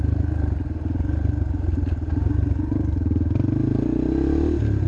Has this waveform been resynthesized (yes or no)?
no